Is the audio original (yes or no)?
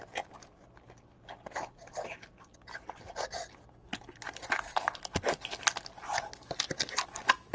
yes